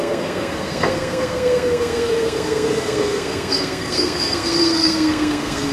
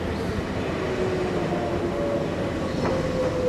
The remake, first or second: first